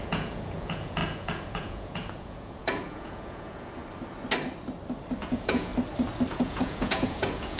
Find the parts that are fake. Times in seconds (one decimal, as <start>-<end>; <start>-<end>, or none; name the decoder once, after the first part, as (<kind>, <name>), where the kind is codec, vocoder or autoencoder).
0.0-3.8 (vocoder, Vocos); 5.2-5.7; 6.3-7.6